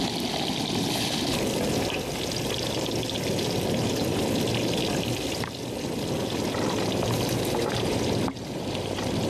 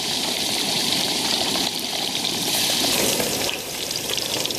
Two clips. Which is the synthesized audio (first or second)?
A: second